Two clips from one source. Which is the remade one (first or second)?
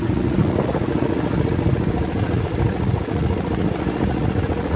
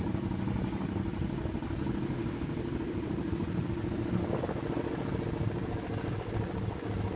first